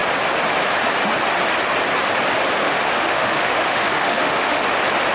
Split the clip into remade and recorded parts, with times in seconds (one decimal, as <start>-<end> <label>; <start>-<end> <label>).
0.0-2.6 recorded; 2.6-4.6 remade; 4.6-5.1 recorded